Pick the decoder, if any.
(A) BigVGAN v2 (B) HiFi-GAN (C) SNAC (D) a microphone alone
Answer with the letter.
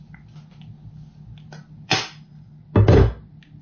D